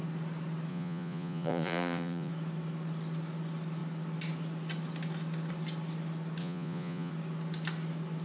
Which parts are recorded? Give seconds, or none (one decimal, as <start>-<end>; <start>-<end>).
0.0-0.7; 2.3-6.4; 7.1-8.2

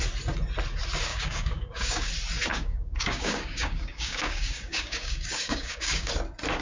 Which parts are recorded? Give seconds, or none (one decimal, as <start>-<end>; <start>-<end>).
0.0-1.1; 2.1-2.5; 6.1-6.6